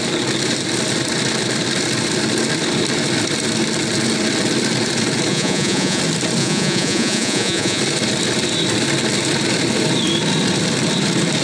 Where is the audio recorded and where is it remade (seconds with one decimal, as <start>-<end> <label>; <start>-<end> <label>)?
0.0-5.3 recorded; 5.3-6.0 remade; 6.0-6.4 recorded; 6.4-7.8 remade; 7.8-11.4 recorded